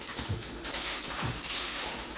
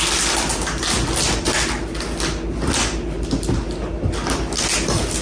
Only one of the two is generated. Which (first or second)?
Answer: first